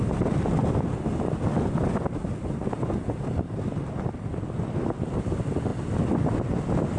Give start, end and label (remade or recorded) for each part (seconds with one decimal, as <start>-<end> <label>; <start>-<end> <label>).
0.0-7.0 recorded